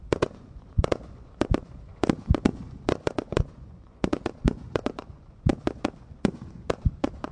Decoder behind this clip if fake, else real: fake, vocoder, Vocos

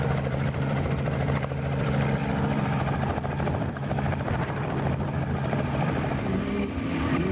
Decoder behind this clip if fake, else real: fake, vocoder, BigVGAN v2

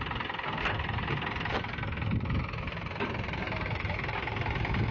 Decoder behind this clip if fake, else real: real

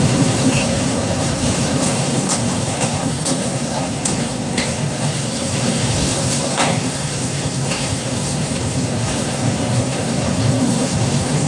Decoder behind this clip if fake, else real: fake, codec, SNAC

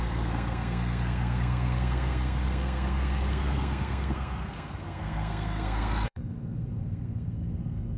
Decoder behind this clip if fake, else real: fake, codec, SNAC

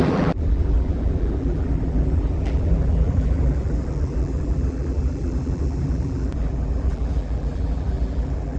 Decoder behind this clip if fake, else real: fake, vocoder, BigVGAN v2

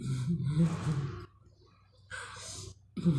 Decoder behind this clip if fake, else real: real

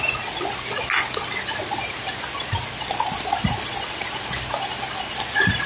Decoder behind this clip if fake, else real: real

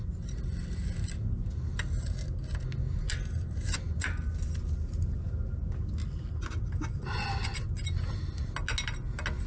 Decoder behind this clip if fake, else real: real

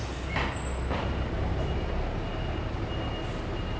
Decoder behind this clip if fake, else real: real